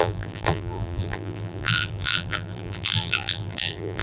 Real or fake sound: fake